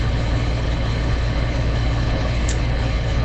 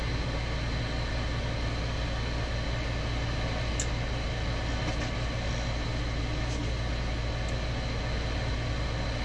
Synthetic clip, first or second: first